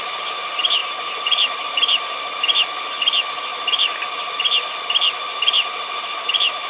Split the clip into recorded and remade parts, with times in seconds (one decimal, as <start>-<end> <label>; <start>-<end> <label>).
0.0-6.7 recorded